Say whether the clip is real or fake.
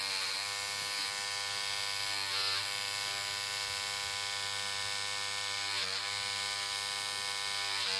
real